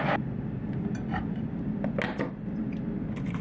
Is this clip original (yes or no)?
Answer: yes